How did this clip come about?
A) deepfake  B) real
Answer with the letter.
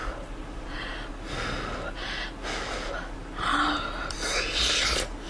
B